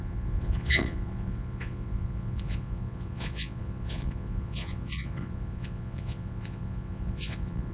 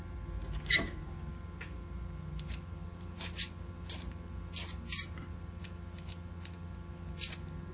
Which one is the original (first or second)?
second